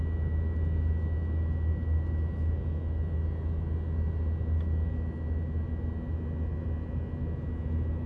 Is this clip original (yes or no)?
yes